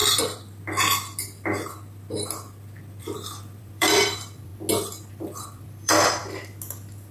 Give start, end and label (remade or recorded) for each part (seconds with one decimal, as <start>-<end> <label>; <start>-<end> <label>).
0.0-3.0 recorded; 3.0-4.5 remade; 4.5-5.1 recorded; 5.1-6.2 remade; 6.2-7.1 recorded